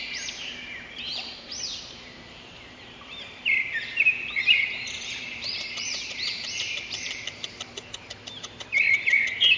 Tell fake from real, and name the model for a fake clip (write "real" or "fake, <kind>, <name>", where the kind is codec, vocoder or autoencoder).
fake, vocoder, BigVGAN v2